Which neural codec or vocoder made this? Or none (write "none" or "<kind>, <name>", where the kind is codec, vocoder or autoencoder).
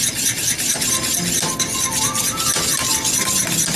none